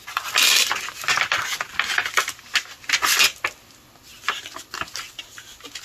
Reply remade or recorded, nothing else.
recorded